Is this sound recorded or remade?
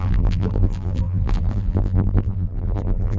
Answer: remade